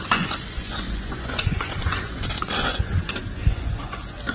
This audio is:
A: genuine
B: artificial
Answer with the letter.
B